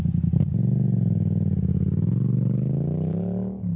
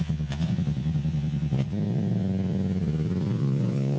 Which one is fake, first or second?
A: second